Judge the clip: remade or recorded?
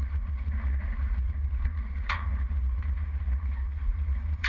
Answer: remade